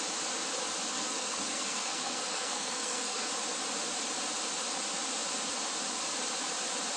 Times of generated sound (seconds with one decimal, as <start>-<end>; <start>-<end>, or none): 0.9-3.3